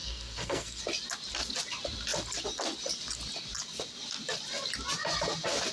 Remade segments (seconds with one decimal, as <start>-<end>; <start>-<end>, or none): 0.0-0.8